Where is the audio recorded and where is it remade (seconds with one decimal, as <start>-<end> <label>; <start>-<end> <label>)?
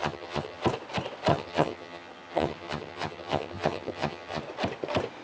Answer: 0.0-0.6 remade; 0.6-1.3 recorded; 1.3-4.4 remade; 4.4-5.2 recorded